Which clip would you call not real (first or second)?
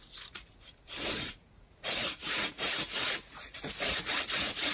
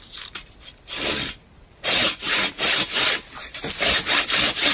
first